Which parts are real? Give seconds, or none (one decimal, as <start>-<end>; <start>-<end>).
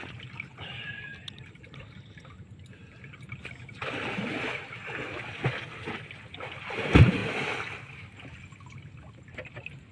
0.0-9.9